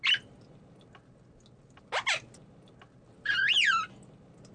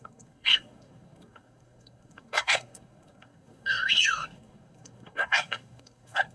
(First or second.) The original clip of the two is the first